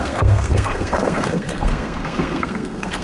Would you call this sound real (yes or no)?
no